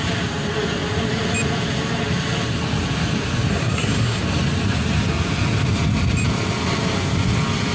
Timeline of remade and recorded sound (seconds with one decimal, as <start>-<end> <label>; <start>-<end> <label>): 0.0-3.5 recorded; 3.5-4.2 remade; 4.2-7.7 recorded

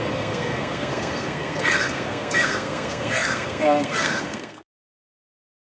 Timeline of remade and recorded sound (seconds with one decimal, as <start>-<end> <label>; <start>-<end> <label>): 0.0-5.6 remade